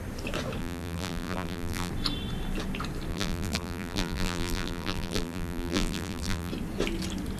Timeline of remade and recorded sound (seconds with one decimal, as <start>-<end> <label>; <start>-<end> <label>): 0.0-0.6 recorded; 0.6-1.9 remade; 1.9-3.1 recorded; 3.1-6.5 remade; 6.5-7.4 recorded